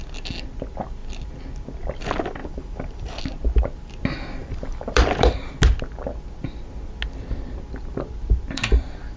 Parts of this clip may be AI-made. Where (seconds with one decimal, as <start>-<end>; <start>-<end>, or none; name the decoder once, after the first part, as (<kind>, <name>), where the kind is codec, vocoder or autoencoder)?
2.4-3.2 (vocoder, BigVGAN v2); 4.4-5.4